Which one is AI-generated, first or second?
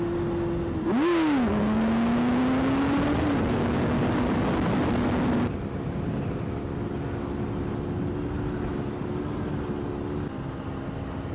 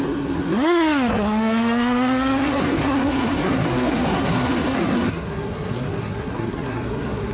second